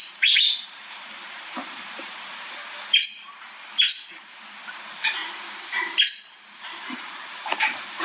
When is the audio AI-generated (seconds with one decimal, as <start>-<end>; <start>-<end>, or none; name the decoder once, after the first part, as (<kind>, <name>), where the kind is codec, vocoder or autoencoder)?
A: 0.0-2.6 (vocoder, BigVGAN v2); 4.8-5.2; 6.6-8.0